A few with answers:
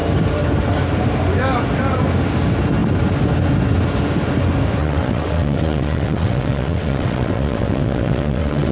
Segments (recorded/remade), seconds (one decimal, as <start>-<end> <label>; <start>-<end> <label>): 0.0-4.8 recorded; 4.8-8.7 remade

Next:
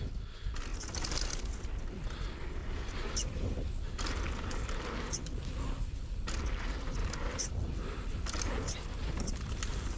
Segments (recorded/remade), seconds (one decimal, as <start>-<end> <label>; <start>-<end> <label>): 0.0-0.7 recorded; 0.7-1.3 remade; 1.3-2.6 recorded; 2.6-4.6 remade; 4.6-7.0 recorded; 7.0-7.7 remade; 7.7-10.0 recorded

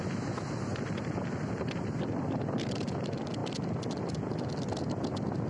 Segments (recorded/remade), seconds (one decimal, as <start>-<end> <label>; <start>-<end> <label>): 0.0-5.5 recorded